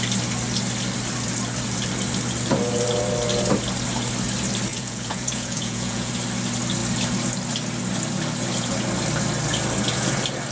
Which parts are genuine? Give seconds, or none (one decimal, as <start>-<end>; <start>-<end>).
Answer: 0.0-4.7; 6.1-10.5